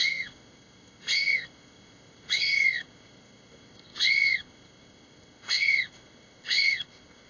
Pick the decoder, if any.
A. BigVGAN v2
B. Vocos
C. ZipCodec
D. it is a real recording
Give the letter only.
C